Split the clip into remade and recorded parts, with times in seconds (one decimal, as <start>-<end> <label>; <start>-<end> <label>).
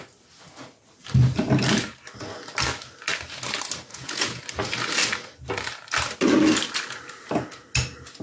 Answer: 0.0-3.9 recorded; 3.9-4.4 remade; 4.4-8.2 recorded